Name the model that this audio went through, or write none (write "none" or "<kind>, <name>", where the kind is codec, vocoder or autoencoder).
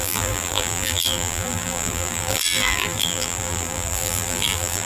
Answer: vocoder, BigVGAN v2